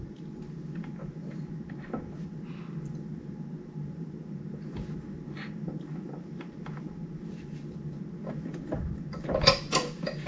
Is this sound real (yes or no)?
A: yes